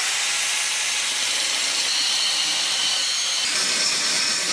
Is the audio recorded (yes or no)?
no